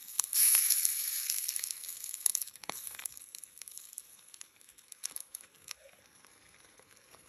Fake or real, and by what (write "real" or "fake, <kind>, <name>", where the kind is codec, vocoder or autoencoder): fake, codec, SNAC